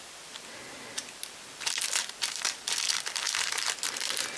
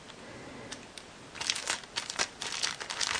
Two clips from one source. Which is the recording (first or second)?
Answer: second